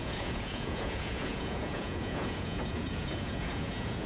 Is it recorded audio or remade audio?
remade